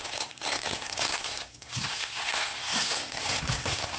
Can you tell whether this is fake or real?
fake